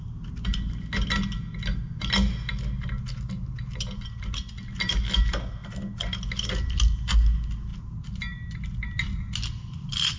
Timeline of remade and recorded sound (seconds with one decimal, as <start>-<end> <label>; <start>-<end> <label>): 0.0-10.2 recorded